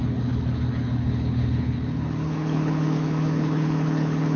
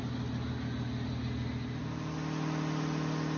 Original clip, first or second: second